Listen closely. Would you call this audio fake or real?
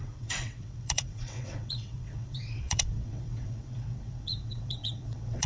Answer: fake